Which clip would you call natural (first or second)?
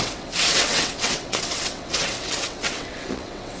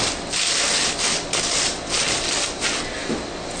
second